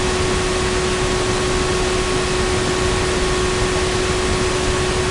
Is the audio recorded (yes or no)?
yes